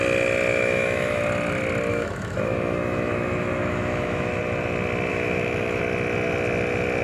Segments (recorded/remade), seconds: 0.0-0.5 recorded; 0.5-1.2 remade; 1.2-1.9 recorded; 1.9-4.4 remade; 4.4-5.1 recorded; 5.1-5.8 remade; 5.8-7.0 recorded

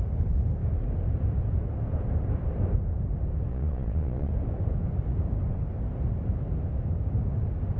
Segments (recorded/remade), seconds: 0.0-3.5 recorded; 3.5-4.3 remade; 4.3-7.8 recorded

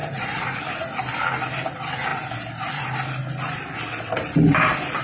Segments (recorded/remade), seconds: 0.0-0.6 remade; 0.6-5.0 recorded

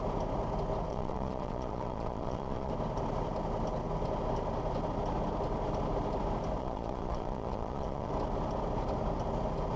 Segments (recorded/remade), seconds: 0.0-0.9 recorded; 0.9-2.7 remade; 2.7-6.6 recorded; 6.6-8.1 remade; 8.1-9.8 recorded

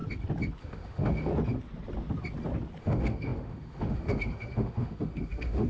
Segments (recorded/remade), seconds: 0.0-0.6 recorded; 0.6-1.3 remade; 1.3-2.8 recorded; 2.8-5.7 remade